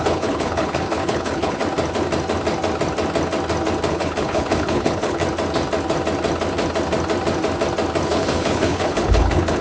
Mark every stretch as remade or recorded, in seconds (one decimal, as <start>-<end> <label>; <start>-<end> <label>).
0.0-1.6 remade; 1.6-3.9 recorded; 3.9-5.2 remade; 5.2-8.1 recorded; 8.1-9.6 remade